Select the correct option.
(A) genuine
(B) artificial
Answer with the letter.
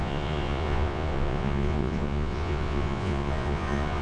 B